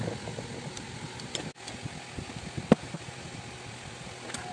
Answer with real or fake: real